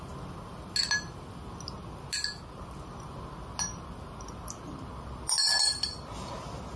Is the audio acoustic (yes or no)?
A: yes